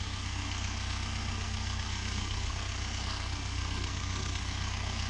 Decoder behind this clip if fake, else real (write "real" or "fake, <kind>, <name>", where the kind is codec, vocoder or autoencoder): fake, codec, SNAC